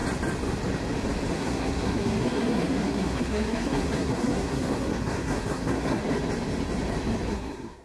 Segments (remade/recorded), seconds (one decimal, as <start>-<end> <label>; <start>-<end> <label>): 0.0-1.3 recorded; 1.3-6.0 remade; 6.0-7.3 recorded; 7.3-7.8 remade